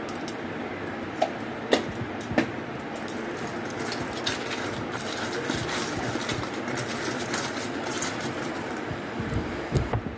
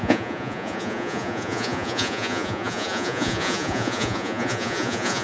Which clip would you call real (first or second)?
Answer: first